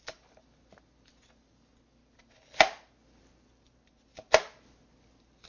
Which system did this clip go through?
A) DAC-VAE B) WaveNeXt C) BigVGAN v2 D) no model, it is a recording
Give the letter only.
D